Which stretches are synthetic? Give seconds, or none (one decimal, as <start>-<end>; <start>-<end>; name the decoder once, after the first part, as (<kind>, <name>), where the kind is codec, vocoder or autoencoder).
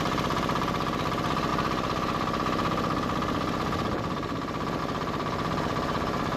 none